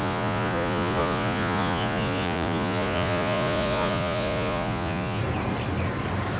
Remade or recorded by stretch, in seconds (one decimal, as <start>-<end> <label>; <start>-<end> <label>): 0.0-5.2 remade; 5.2-6.4 recorded

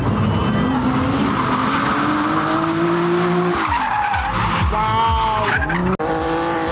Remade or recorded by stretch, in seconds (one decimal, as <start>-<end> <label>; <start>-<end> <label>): 0.0-6.7 recorded

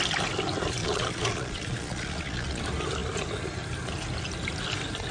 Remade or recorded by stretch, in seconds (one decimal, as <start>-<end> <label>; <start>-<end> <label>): 0.0-0.8 recorded; 0.8-2.6 remade; 2.6-5.1 recorded